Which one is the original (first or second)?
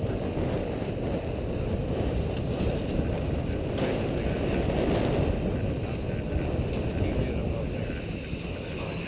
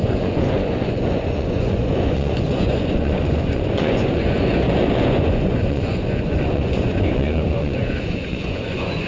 first